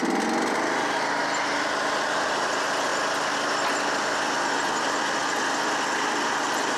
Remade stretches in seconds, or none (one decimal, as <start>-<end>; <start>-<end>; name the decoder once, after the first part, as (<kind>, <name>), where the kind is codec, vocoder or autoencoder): none